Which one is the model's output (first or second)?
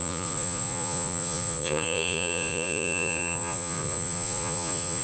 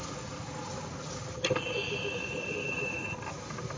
first